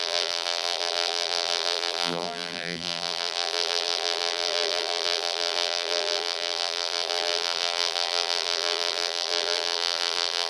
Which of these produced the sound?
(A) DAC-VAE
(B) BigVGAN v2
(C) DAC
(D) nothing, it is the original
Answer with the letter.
B